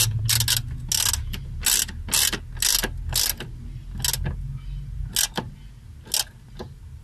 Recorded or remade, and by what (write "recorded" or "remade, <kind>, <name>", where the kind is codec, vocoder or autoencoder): recorded